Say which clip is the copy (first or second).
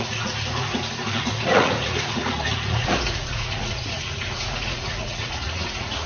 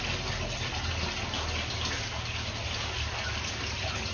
first